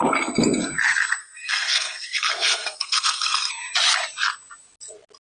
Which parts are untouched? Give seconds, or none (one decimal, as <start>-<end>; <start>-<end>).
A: 0.0-1.2; 3.5-5.3